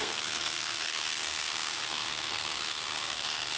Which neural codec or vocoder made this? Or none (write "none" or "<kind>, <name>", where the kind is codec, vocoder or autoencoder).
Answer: codec, SNAC